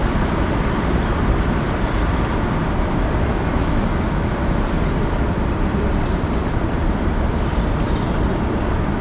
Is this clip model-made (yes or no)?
yes